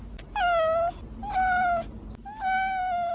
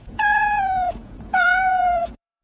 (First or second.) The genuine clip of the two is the first